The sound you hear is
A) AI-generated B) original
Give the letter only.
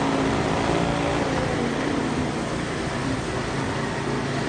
B